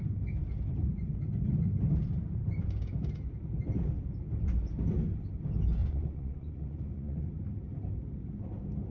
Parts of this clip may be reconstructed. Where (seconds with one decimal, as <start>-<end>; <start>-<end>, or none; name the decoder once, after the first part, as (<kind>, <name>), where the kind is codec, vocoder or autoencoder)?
5.8-7.3 (vocoder, Vocos)